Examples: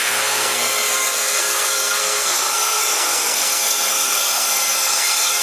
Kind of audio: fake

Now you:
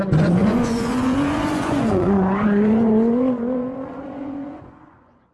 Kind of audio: fake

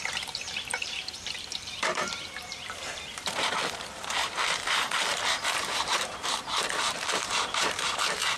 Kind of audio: fake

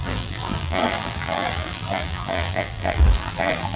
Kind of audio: fake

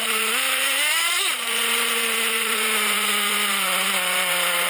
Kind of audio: fake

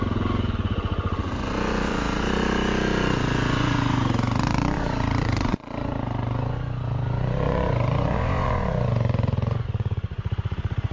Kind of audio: fake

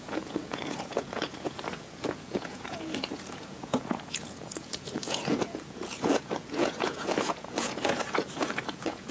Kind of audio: fake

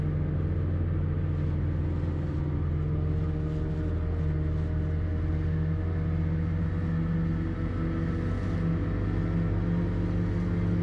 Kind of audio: real